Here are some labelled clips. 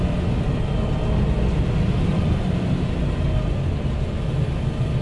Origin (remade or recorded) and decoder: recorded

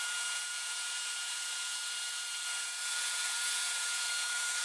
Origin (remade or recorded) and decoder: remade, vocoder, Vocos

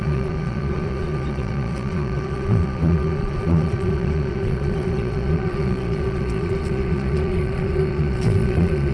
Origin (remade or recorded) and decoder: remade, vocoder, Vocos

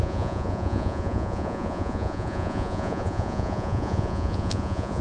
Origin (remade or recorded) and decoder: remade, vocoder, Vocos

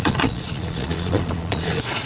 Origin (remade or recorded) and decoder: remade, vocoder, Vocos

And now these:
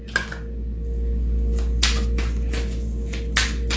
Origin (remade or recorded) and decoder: recorded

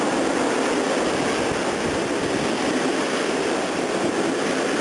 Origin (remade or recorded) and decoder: recorded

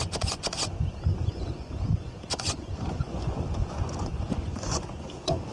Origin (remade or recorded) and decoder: remade, vocoder, Vocos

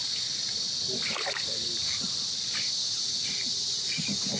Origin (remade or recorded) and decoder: recorded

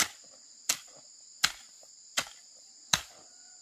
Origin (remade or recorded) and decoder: recorded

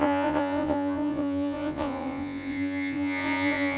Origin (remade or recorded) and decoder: remade, vocoder, Vocos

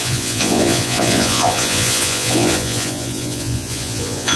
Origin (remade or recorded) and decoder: remade, vocoder, Vocos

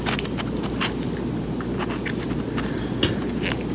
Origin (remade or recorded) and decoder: recorded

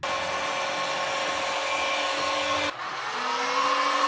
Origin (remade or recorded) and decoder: recorded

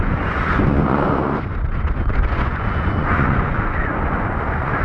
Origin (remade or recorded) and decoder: remade, vocoder, Vocos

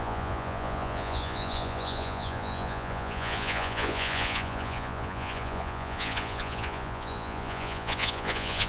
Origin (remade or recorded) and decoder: remade, vocoder, Vocos